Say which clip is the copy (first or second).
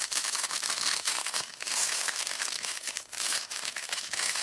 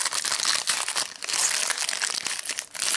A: first